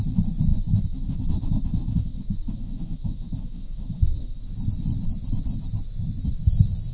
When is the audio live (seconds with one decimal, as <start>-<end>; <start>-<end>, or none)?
0.0-0.5; 4.5-6.9